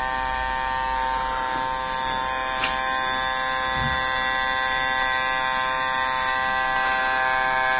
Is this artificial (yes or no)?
no